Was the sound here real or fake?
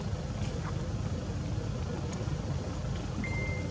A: real